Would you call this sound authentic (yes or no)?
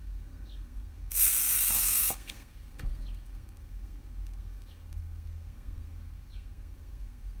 no